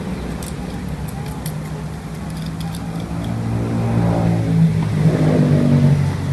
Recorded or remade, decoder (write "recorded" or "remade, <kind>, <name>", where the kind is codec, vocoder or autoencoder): recorded